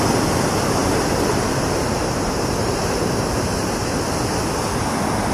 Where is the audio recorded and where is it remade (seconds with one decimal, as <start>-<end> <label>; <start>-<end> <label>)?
0.0-0.8 recorded; 0.8-4.0 remade; 4.0-5.3 recorded